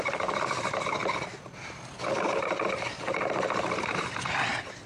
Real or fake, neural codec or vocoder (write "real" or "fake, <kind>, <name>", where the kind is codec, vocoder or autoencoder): real